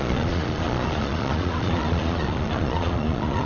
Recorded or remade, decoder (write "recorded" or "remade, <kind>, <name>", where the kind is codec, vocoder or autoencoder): remade, vocoder, Vocos